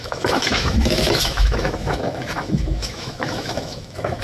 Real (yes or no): no